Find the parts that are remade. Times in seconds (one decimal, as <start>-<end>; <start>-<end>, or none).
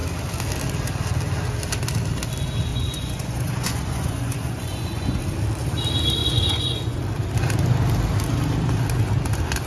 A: 2.7-5.2; 6.2-7.0